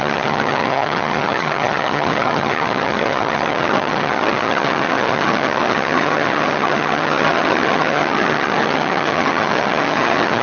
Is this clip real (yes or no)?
no